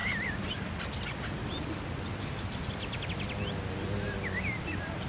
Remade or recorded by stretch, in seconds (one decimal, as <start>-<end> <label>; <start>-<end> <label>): 0.0-5.1 recorded

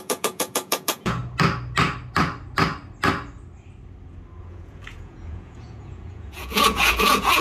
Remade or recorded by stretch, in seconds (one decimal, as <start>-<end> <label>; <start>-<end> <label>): 0.0-1.2 remade; 1.2-4.4 recorded; 4.4-7.4 remade

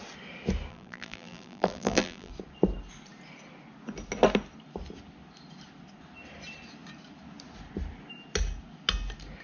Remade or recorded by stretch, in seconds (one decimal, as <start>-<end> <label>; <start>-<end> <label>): 0.0-0.7 recorded; 0.7-2.3 remade; 2.3-9.4 recorded